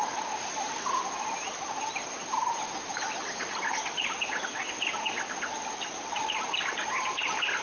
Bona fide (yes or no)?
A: yes